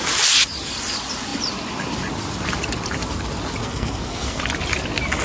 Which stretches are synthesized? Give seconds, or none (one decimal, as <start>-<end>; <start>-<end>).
3.6-4.4